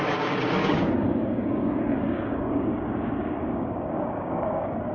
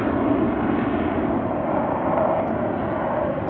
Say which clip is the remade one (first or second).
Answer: first